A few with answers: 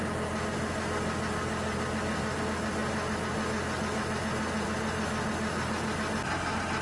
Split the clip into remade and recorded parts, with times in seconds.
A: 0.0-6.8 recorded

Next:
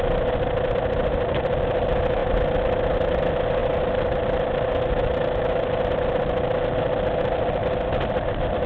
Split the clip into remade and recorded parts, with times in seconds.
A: 0.0-8.7 recorded